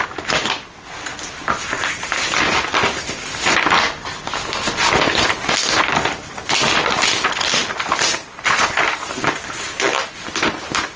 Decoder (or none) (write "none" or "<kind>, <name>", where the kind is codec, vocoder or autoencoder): none